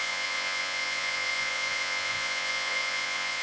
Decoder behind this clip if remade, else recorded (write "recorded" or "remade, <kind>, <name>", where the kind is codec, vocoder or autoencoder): remade, vocoder, Vocos